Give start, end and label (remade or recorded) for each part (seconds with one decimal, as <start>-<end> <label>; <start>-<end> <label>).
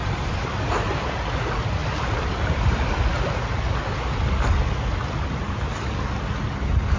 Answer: 0.0-7.0 recorded